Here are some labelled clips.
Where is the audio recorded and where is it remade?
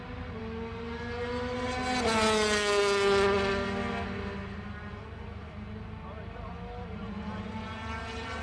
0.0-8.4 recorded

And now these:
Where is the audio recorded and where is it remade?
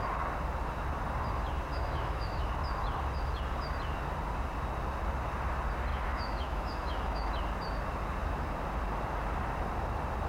0.0-1.7 recorded; 1.7-2.5 remade; 2.5-5.9 recorded; 5.9-7.3 remade; 7.3-10.3 recorded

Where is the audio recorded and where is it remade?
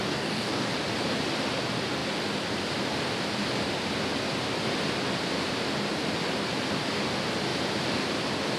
0.0-0.7 remade; 0.7-8.6 recorded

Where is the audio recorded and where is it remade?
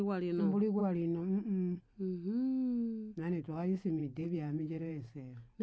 0.0-4.0 recorded; 4.0-5.6 remade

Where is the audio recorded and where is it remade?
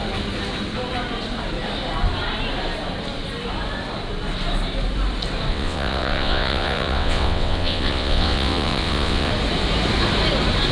0.0-5.5 recorded; 5.5-9.3 remade; 9.3-10.7 recorded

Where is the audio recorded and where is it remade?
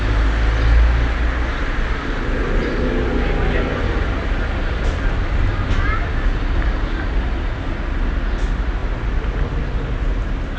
0.0-10.6 recorded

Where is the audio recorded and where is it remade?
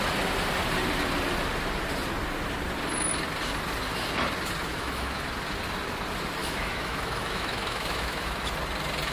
0.0-4.7 recorded; 4.7-5.3 remade; 5.3-6.4 recorded; 6.4-8.5 remade; 8.5-9.1 recorded